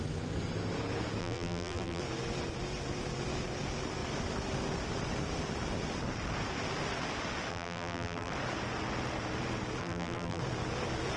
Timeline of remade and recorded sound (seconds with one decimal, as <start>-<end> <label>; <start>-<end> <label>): 0.0-1.2 recorded; 1.2-2.0 remade; 2.0-7.5 recorded; 7.5-8.3 remade; 8.3-9.8 recorded; 9.8-10.4 remade; 10.4-11.2 recorded